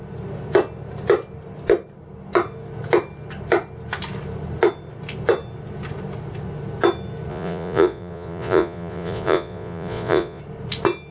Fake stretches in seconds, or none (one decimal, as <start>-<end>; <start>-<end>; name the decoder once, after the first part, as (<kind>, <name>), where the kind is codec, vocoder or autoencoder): 7.3-10.4 (vocoder, Vocos)